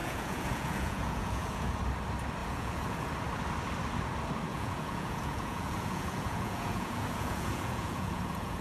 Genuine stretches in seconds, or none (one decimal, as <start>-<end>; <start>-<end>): 1.8-2.4; 3.1-4.5